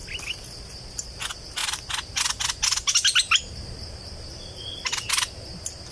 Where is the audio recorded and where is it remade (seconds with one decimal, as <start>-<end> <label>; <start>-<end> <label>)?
0.0-5.9 recorded